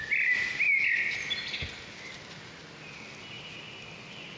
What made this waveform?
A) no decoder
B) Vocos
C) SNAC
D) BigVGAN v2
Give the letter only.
A